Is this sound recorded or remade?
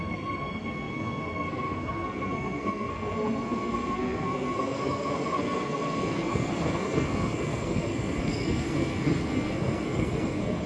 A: remade